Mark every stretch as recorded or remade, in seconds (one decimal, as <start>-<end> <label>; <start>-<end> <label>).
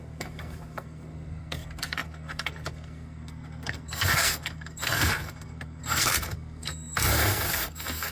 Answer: 0.0-8.1 remade